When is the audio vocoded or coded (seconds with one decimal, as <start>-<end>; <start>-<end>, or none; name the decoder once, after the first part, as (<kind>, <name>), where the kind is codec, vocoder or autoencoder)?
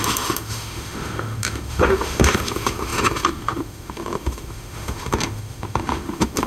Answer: 0.0-6.5 (autoencoder, DAC-VAE)